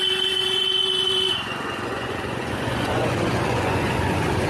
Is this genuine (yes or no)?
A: no